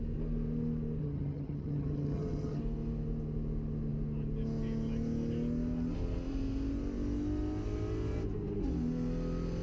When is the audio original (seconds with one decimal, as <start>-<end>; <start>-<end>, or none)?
0.0-1.0; 2.6-9.6